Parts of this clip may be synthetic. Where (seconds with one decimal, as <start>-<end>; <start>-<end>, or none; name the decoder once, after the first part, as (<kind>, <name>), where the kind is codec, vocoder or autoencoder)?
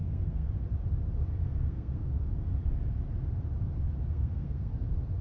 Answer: 0.0-0.5 (codec, SNAC); 1.4-2.1; 4.1-4.7